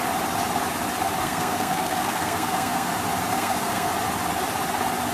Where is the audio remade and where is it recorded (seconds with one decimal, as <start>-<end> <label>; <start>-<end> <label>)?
0.0-1.2 recorded; 1.2-2.9 remade; 2.9-3.3 recorded; 3.3-3.9 remade; 3.9-5.1 recorded

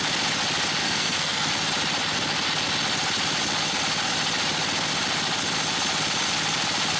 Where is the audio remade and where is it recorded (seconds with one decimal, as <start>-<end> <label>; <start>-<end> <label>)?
0.0-0.8 recorded; 0.8-1.5 remade; 1.5-7.0 recorded

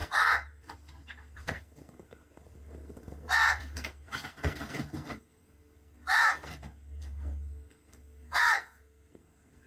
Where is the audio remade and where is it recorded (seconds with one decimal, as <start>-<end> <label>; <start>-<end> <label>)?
0.0-9.7 remade

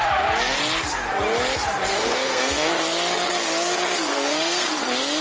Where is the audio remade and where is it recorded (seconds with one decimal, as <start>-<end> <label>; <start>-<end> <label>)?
0.0-1.9 recorded; 1.9-2.7 remade; 2.7-4.1 recorded; 4.1-4.7 remade; 4.7-5.2 recorded

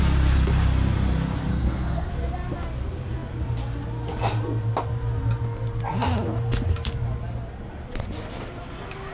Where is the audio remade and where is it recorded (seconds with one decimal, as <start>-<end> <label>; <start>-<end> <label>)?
0.0-1.5 recorded; 1.5-2.1 remade; 2.1-9.1 recorded